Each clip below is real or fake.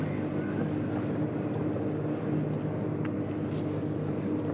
real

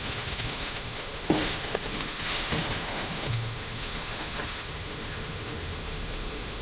fake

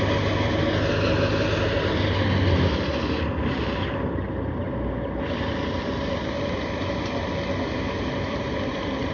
real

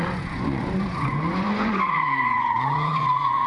fake